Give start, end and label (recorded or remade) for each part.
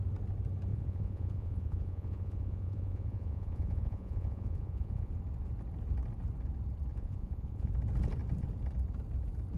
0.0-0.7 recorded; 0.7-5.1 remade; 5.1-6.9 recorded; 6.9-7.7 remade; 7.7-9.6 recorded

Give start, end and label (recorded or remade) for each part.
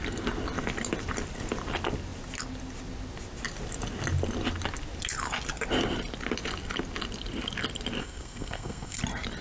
0.0-8.0 recorded; 8.0-9.0 remade; 9.0-9.4 recorded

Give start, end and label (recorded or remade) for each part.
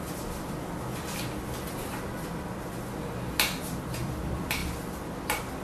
0.0-5.6 recorded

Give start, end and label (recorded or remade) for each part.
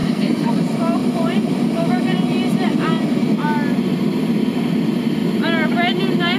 0.0-0.5 remade; 0.5-6.4 recorded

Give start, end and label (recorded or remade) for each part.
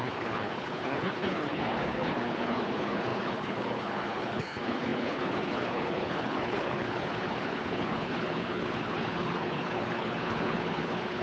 0.0-11.2 remade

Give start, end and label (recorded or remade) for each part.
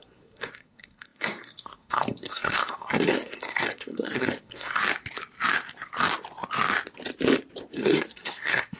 0.0-4.8 remade; 4.8-7.7 recorded; 7.7-8.8 remade